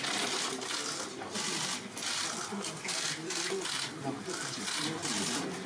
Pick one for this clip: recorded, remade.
recorded